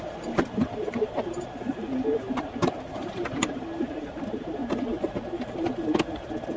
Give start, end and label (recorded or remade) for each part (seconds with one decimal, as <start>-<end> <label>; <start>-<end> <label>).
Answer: 0.0-4.6 remade; 4.6-6.6 recorded